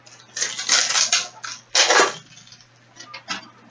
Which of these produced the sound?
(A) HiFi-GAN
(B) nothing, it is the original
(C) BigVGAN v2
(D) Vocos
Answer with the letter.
B